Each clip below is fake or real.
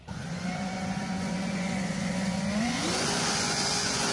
fake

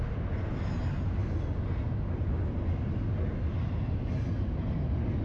real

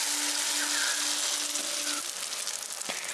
real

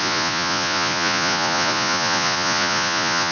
fake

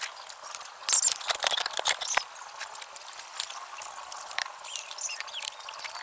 real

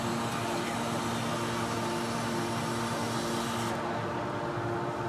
real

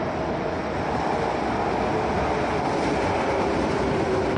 real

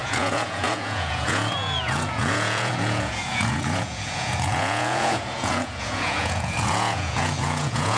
fake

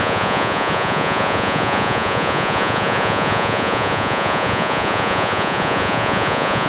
fake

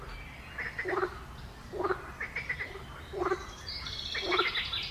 real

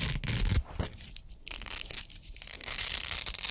real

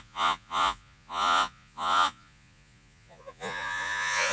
fake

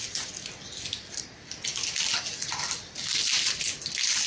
real